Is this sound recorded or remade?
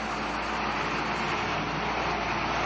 recorded